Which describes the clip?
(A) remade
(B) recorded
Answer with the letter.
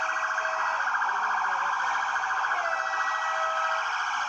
B